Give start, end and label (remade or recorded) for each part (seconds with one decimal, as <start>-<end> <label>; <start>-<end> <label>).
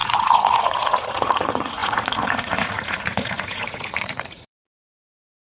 0.0-5.4 remade